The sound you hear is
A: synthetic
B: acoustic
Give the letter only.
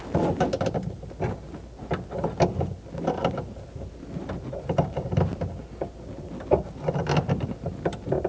B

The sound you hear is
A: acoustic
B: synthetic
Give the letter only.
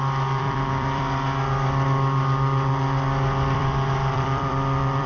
B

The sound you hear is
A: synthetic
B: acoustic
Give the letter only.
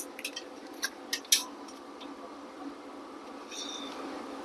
B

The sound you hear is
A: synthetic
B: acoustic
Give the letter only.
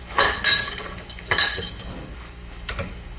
A